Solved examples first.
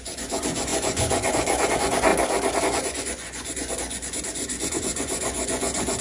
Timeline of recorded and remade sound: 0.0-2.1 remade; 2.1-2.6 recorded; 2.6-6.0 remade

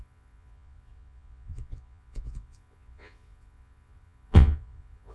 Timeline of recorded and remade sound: 0.0-5.1 remade